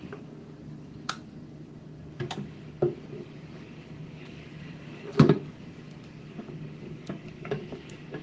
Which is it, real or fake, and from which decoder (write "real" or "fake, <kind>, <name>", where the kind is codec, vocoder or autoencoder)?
fake, codec, DAC